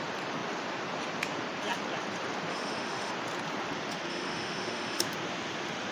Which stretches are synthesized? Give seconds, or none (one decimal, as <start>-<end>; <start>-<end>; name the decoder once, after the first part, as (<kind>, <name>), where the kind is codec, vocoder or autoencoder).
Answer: 2.5-3.1 (autoencoder, DAC-VAE); 4.1-5.0